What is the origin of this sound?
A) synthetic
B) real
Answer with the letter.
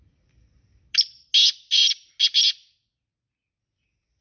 B